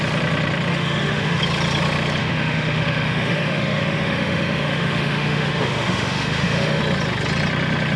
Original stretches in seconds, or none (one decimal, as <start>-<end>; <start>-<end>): 0.0-0.7; 1.4-2.2; 6.8-8.0